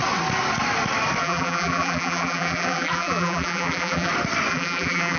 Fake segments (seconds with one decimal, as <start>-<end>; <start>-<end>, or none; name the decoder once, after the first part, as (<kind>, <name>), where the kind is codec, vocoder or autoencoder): 1.2-4.1 (vocoder, BigVGAN v2); 4.5-5.2